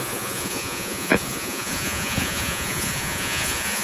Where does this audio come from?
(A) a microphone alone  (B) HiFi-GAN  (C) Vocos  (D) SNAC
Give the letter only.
C